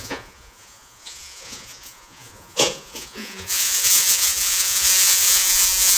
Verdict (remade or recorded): remade